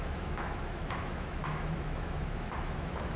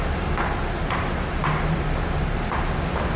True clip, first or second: second